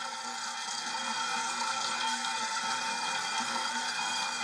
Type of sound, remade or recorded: remade